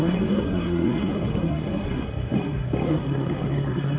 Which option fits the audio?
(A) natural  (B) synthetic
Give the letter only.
B